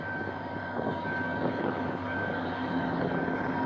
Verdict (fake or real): fake